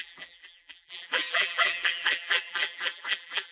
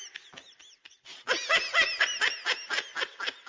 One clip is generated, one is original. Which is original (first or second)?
second